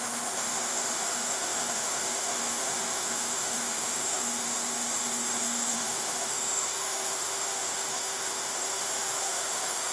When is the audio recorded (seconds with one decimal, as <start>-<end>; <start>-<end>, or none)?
none

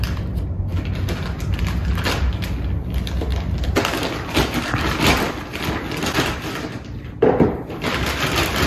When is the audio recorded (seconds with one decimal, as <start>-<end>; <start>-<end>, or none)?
0.0-8.7

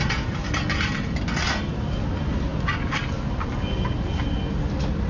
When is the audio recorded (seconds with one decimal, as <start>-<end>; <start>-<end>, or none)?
0.0-5.1